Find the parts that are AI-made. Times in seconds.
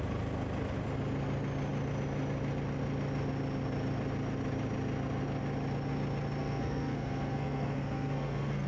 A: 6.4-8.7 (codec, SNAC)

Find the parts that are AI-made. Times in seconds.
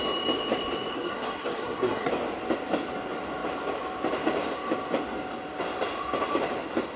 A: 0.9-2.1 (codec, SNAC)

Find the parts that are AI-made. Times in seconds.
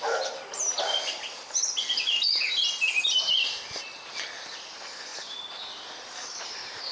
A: none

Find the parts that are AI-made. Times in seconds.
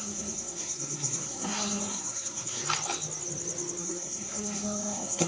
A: 0.0-2.6 (codec, SNAC); 3.8-5.3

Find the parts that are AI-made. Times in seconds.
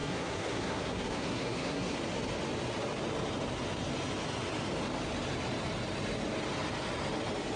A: 0.0-2.0 (codec, SNAC)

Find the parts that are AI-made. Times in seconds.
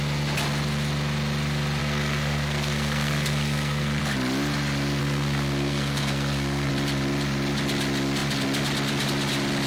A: 1.8-4.0 (codec, SNAC); 5.0-6.7